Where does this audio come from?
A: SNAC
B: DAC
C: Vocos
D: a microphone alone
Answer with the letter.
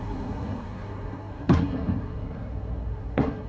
A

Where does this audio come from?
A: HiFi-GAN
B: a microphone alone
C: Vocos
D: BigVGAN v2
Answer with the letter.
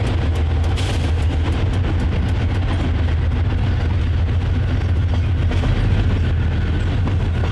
B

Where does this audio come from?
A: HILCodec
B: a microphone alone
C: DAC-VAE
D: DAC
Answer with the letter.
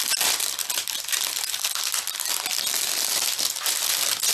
B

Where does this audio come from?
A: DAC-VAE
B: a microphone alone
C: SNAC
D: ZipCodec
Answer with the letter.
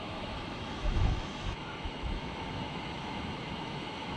A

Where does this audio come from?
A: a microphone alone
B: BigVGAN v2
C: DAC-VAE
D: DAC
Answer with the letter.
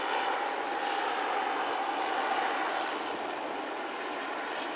A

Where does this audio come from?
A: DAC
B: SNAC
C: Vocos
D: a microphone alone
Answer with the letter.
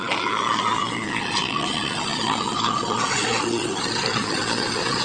C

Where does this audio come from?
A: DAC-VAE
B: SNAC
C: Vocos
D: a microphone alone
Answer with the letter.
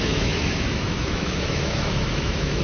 A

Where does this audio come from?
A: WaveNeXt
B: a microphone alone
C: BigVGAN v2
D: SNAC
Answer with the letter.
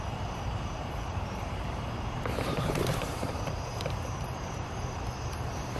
C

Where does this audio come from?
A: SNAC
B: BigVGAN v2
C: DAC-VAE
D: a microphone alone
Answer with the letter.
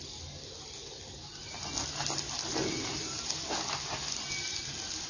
D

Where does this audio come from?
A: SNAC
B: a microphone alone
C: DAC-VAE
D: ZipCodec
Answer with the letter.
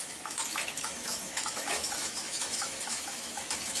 C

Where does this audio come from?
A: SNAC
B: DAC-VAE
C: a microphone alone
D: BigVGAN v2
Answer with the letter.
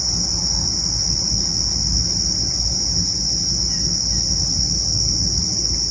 C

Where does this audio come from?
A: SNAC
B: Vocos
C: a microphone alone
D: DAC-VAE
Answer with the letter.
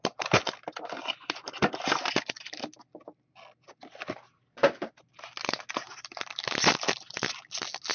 C